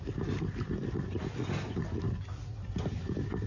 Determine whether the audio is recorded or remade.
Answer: recorded